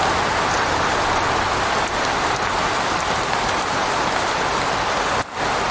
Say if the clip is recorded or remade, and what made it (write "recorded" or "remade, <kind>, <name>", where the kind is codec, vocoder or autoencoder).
recorded